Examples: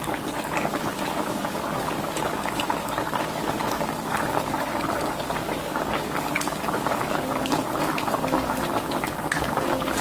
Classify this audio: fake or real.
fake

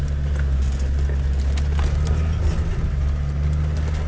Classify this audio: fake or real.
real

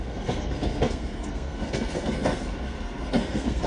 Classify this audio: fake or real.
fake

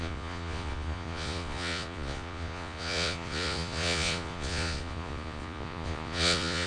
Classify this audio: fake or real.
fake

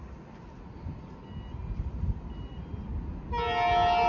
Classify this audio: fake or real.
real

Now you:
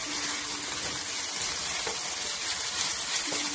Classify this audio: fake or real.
real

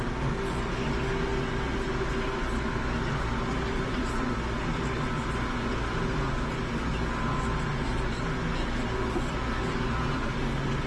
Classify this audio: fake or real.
real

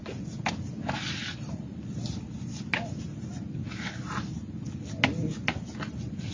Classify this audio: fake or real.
real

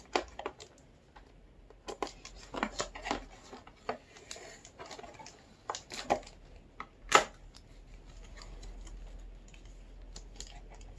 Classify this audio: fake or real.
real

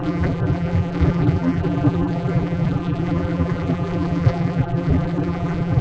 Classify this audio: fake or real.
fake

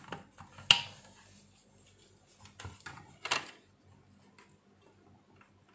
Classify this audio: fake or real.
real